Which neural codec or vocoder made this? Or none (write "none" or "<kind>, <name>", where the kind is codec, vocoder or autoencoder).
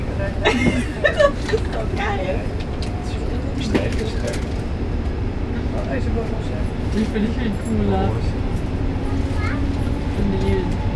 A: none